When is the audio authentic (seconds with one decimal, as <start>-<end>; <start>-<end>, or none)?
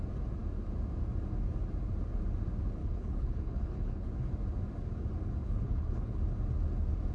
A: 0.0-2.8; 4.1-5.4; 6.2-7.1